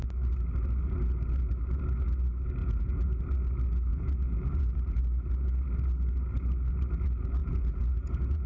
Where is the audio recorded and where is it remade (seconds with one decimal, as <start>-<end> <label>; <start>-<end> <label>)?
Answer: 0.0-2.6 recorded; 2.6-3.1 remade; 3.1-3.9 recorded; 3.9-5.0 remade; 5.0-7.4 recorded; 7.4-8.5 remade